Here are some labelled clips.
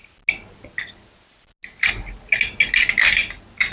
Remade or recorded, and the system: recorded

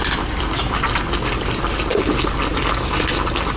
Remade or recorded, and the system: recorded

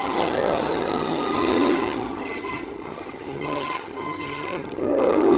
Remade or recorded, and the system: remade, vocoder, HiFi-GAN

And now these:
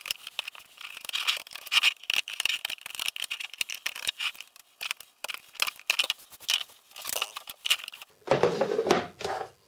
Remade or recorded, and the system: recorded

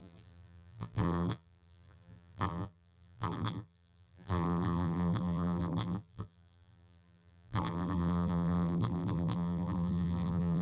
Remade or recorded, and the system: remade, vocoder, BigVGAN v2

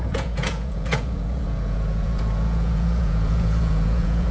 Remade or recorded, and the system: remade, vocoder, Vocos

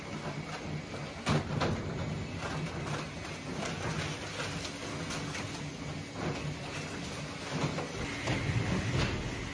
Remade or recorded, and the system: recorded